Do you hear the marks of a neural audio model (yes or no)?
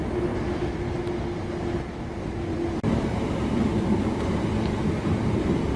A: no